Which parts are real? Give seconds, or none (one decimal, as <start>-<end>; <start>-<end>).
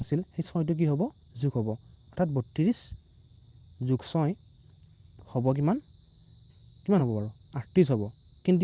0.0-8.6